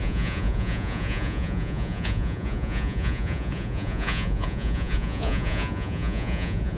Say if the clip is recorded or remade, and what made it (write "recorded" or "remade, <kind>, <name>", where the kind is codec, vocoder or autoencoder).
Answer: remade, vocoder, Vocos